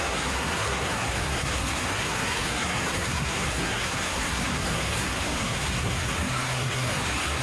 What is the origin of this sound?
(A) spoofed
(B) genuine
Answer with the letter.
A